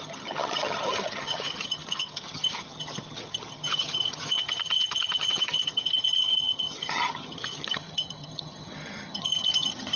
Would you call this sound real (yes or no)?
no